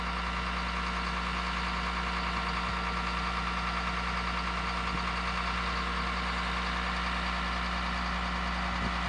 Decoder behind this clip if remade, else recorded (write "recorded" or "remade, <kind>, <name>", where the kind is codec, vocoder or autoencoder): recorded